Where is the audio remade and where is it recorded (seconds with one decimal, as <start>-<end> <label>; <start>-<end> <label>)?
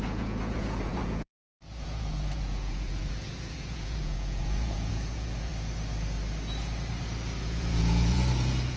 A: 0.0-5.5 remade; 5.5-7.4 recorded; 7.4-8.8 remade